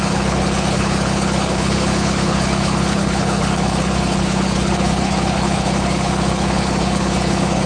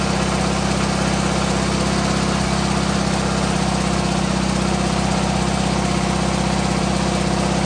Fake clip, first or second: first